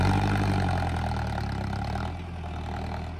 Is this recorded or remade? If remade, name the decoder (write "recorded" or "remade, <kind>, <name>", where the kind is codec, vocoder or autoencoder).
recorded